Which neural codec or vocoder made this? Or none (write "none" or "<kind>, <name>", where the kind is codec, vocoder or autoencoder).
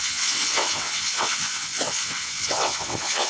vocoder, WaveNeXt